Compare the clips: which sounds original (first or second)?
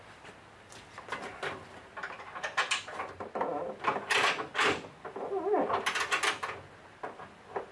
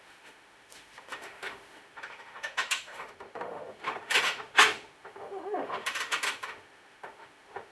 first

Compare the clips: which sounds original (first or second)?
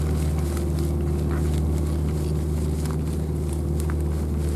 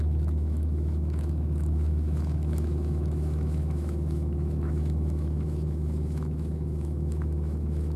first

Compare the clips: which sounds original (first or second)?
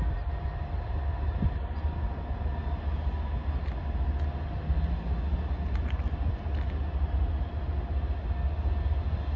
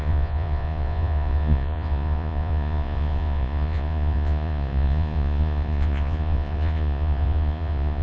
first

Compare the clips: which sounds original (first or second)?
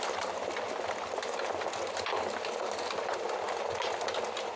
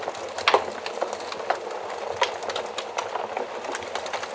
second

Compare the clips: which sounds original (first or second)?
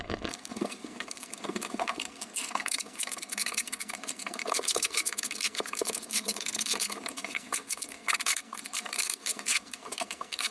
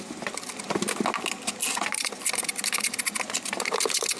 second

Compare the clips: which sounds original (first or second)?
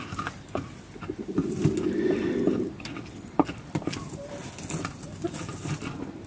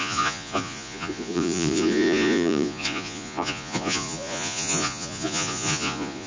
first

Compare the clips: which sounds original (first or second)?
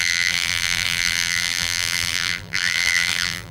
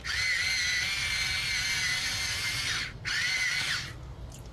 second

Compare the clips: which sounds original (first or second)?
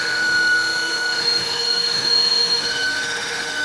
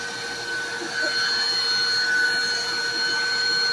second